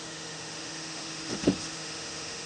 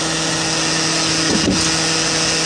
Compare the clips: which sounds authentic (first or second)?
second